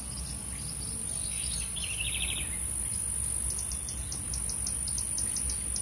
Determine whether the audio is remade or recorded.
recorded